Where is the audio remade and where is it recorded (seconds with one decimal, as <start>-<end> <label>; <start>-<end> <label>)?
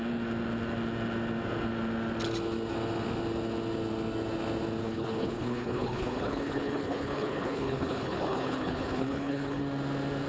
0.0-4.8 recorded; 4.8-9.6 remade; 9.6-10.3 recorded